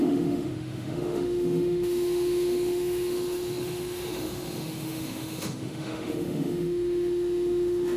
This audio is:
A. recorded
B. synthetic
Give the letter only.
B